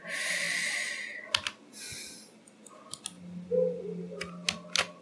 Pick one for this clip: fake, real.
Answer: real